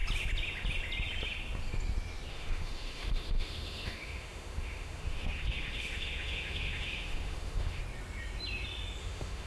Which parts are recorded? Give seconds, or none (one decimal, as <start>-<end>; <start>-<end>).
0.0-2.3; 7.8-9.0